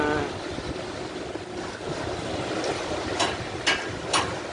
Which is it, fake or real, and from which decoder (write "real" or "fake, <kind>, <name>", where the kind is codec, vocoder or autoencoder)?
real